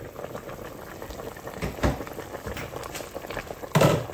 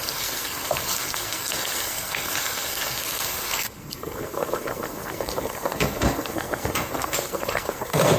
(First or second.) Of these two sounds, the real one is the first